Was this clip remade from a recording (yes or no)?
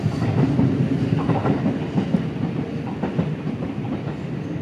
no